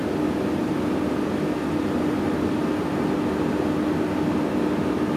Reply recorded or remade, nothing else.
recorded